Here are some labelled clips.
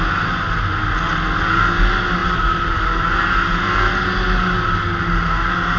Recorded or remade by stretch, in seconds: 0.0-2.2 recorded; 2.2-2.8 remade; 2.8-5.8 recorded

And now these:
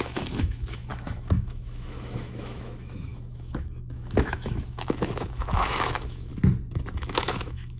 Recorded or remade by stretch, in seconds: 0.0-6.3 remade; 6.3-7.0 recorded; 7.0-7.8 remade

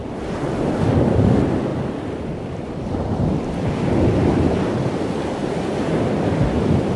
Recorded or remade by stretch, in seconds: 0.0-7.0 recorded

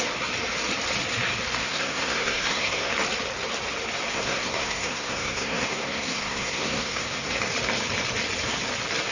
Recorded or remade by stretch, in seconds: 0.0-1.6 recorded; 1.6-2.9 remade; 2.9-4.1 recorded; 4.1-7.4 remade; 7.4-9.1 recorded

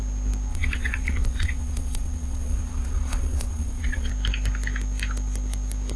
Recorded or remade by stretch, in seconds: 0.0-0.5 recorded; 0.5-4.1 remade; 4.1-6.0 recorded

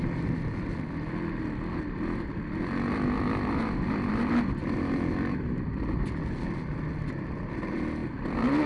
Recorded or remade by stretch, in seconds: 0.0-8.7 recorded

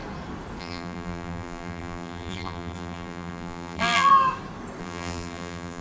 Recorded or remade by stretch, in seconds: 0.0-0.6 recorded; 0.6-4.1 remade; 4.1-4.8 recorded; 4.8-5.8 remade

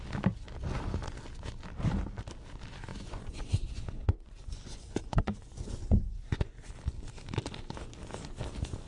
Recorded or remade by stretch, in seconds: 0.0-2.9 recorded; 2.9-6.7 remade; 6.7-8.9 recorded